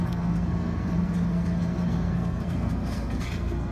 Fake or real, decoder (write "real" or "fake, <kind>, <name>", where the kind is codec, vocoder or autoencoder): fake, codec, SNAC